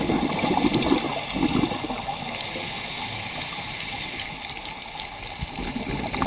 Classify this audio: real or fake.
real